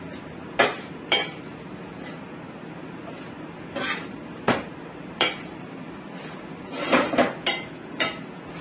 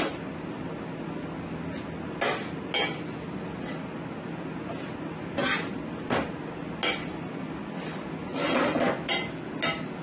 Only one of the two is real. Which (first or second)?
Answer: second